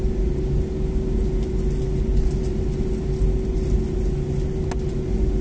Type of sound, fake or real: real